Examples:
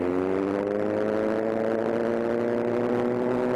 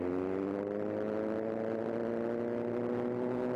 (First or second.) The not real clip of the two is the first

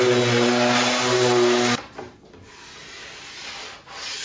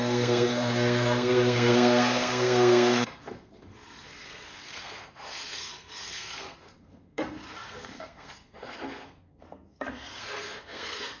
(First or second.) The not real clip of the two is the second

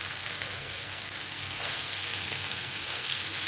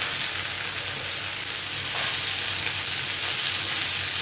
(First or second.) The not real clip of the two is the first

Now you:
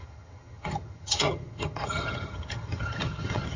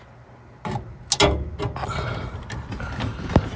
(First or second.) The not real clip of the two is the first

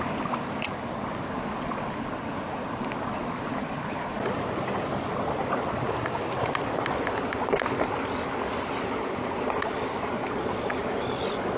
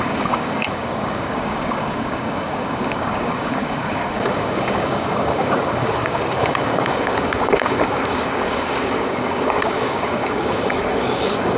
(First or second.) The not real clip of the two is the second